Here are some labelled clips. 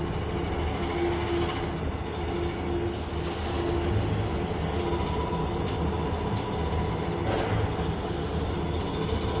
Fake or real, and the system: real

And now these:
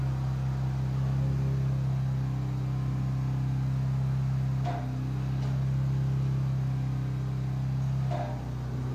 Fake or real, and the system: real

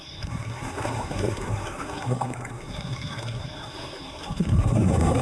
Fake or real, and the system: fake, codec, SNAC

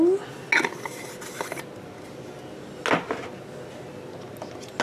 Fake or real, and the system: real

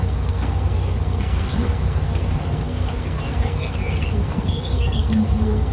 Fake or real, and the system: fake, codec, SNAC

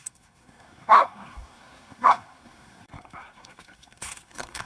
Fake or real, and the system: fake, codec, SNAC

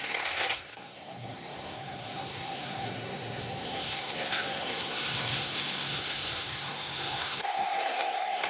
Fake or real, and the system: fake, codec, SNAC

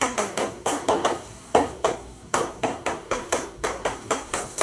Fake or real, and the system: fake, codec, SNAC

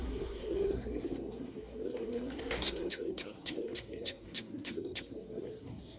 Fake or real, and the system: fake, codec, SNAC